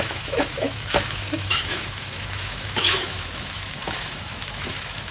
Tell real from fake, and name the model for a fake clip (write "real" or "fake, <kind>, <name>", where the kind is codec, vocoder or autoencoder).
fake, autoencoder, DAC-VAE